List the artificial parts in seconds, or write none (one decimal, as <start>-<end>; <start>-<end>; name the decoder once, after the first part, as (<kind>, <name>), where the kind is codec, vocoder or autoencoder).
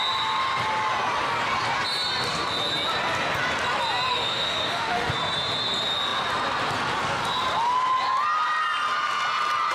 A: 4.1-5.1 (autoencoder, DAC-VAE)